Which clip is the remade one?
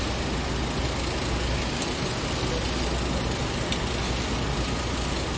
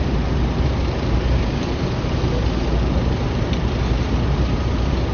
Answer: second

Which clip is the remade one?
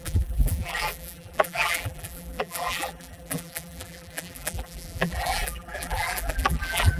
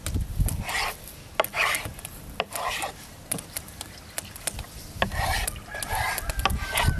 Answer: first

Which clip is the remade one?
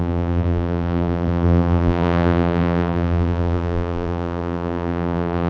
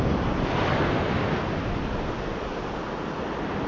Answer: first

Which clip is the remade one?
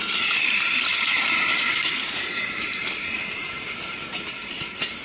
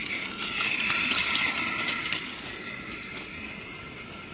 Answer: first